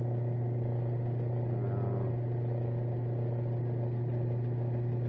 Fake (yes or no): no